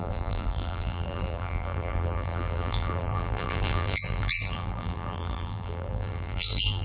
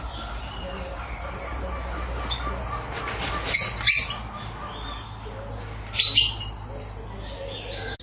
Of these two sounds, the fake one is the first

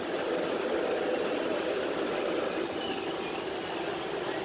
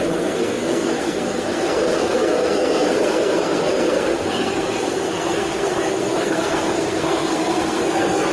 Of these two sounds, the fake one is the second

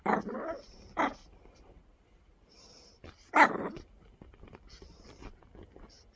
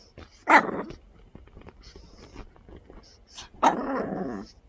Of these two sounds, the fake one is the first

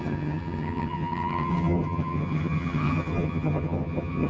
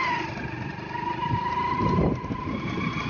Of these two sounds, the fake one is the first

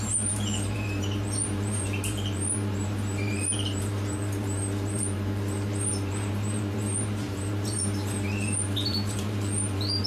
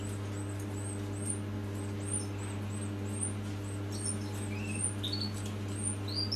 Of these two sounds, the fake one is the first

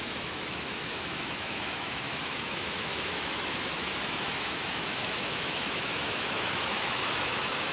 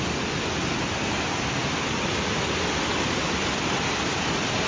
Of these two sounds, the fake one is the first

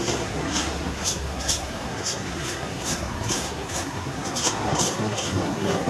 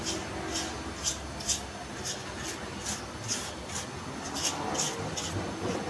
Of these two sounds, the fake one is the first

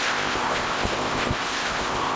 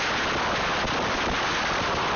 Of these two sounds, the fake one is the first